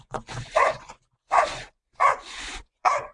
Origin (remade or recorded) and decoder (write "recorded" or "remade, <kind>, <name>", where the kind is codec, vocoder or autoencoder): remade, vocoder, Vocos